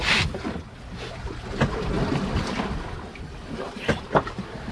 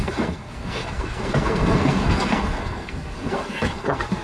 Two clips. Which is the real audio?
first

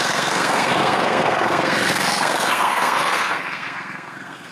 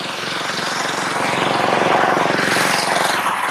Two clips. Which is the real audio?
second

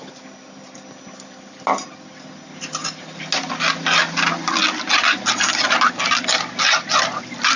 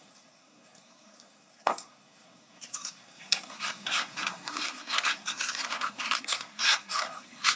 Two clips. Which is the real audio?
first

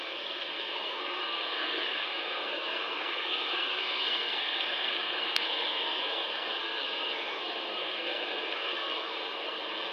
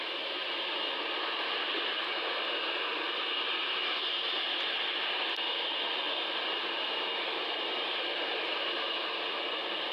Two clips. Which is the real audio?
second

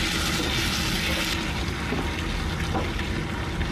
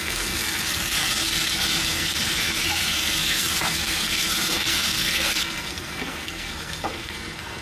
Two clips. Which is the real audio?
first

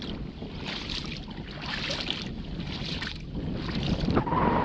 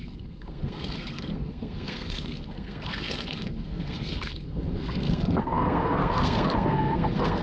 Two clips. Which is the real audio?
first